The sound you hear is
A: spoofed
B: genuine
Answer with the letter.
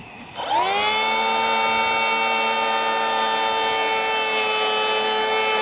B